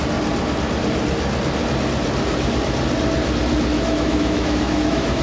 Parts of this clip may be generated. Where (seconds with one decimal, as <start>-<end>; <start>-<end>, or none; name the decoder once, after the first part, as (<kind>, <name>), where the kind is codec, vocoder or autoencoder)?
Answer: 3.7-5.2 (autoencoder, DAC-VAE)